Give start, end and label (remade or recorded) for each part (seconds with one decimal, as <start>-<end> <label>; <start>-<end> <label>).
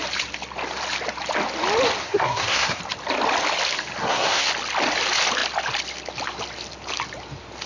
0.0-2.0 recorded; 2.0-2.8 remade; 2.8-4.0 recorded; 4.0-4.5 remade; 4.5-7.7 recorded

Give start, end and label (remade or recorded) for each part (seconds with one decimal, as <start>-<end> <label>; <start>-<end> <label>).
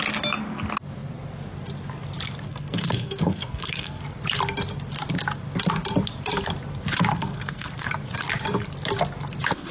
0.0-2.5 recorded; 2.5-4.0 remade; 4.0-7.1 recorded; 7.1-7.9 remade; 7.9-9.7 recorded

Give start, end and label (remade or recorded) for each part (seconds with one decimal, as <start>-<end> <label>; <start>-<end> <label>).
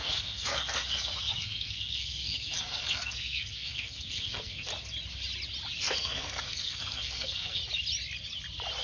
0.0-4.7 remade; 4.7-5.8 recorded; 5.8-7.6 remade; 7.6-8.8 recorded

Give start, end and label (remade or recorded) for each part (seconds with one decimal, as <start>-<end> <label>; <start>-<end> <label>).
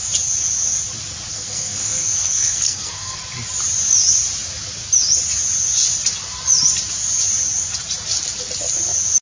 0.0-1.3 recorded; 1.3-3.2 remade; 3.2-9.2 recorded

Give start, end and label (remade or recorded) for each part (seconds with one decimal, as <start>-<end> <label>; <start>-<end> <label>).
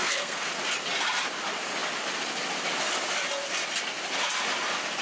0.0-0.5 remade; 0.5-5.0 recorded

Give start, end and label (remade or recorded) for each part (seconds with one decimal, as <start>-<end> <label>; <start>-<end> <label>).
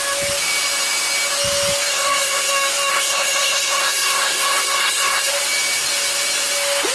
0.0-1.9 recorded; 1.9-2.5 remade; 2.5-2.9 recorded; 2.9-5.3 remade; 5.3-6.9 recorded